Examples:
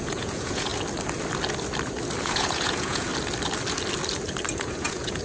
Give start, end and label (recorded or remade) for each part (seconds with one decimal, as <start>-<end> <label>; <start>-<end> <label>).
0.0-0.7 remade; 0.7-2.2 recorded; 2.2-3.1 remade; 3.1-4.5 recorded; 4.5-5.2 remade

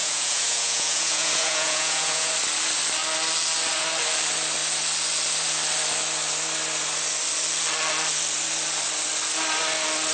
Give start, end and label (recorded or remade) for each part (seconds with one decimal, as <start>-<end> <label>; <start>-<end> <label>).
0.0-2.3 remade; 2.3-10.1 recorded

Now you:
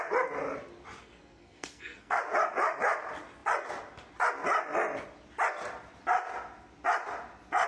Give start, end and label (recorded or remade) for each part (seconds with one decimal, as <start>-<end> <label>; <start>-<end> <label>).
0.0-1.0 recorded; 1.0-2.2 remade; 2.2-7.7 recorded

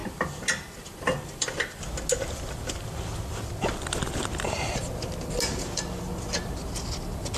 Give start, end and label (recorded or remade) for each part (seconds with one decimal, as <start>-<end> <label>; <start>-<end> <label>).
0.0-7.4 recorded

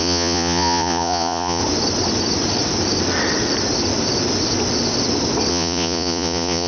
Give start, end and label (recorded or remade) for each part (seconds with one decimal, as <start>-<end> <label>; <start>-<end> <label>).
0.0-1.6 remade; 1.6-5.5 recorded; 5.5-6.7 remade

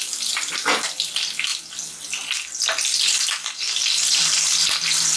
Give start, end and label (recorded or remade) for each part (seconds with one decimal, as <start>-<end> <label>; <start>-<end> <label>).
0.0-5.2 recorded